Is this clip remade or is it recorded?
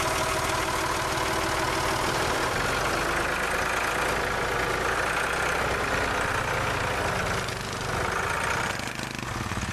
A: recorded